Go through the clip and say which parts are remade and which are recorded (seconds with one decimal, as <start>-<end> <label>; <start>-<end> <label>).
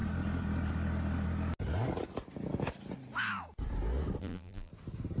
0.0-4.2 recorded; 4.2-4.7 remade; 4.7-5.2 recorded